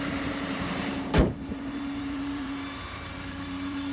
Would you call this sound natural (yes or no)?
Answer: no